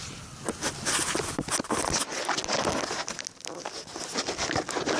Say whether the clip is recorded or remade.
recorded